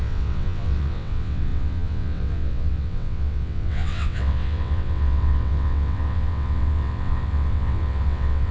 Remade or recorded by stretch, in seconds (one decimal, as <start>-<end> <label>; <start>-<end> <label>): 0.0-8.5 remade